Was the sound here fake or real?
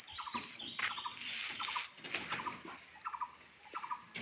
real